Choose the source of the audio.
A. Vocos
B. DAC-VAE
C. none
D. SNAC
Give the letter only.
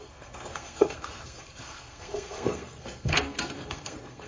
D